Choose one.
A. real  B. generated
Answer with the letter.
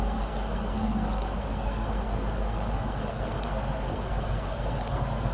B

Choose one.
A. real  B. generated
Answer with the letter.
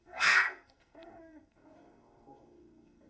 B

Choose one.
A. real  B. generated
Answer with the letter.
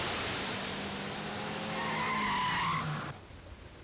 A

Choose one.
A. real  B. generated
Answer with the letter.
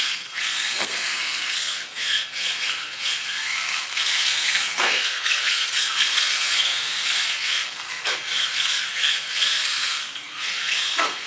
B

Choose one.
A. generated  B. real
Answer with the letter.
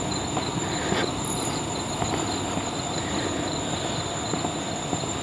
B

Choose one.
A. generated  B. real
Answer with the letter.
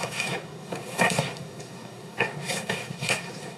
A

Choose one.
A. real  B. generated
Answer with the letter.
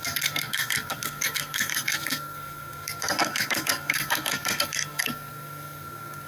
B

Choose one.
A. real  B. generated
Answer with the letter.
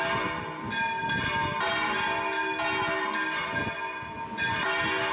A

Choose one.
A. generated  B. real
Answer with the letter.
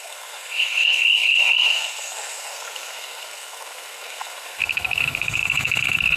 A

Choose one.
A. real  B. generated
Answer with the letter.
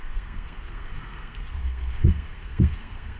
B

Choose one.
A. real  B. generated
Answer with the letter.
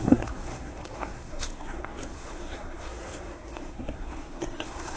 B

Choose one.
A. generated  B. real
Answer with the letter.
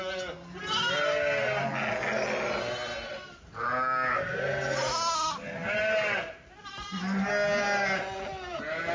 B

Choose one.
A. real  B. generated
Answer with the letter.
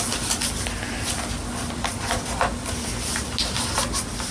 A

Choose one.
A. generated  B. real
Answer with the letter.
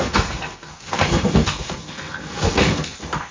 A